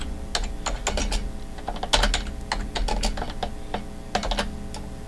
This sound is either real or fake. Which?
real